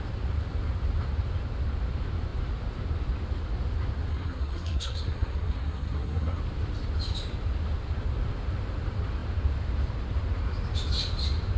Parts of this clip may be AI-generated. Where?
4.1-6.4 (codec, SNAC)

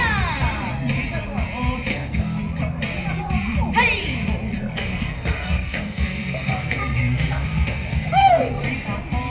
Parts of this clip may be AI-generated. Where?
1.9-2.4 (codec, SNAC); 4.6-8.6